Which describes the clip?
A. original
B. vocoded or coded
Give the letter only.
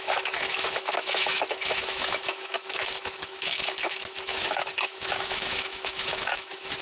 B